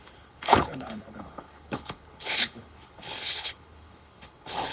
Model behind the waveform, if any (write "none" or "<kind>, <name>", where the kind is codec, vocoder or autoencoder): codec, HILCodec